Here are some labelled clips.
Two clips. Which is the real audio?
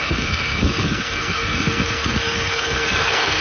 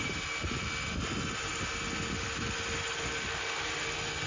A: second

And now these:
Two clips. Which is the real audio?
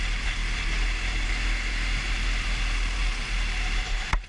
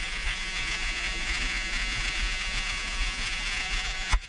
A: first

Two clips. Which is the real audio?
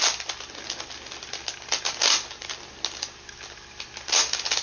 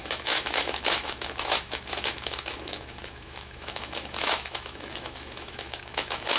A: first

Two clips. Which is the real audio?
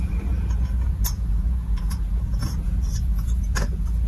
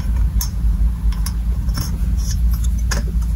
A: second